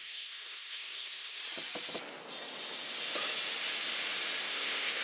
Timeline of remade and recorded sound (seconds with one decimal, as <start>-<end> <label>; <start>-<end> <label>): 0.0-1.4 remade; 1.4-4.4 recorded; 4.4-5.0 remade